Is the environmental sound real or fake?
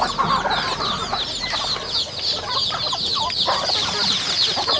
real